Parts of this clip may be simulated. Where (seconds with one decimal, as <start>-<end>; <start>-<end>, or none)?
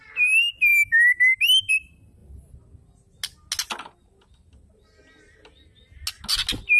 none